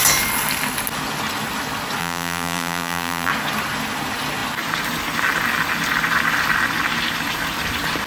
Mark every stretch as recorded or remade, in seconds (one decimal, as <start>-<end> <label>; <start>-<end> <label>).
0.0-2.0 recorded; 2.0-3.3 remade; 3.3-8.1 recorded